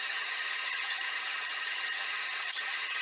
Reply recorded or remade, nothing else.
remade